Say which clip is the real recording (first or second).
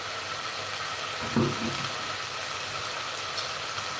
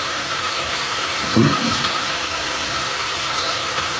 first